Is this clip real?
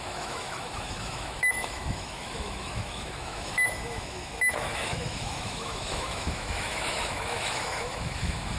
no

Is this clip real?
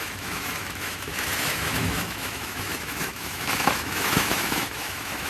no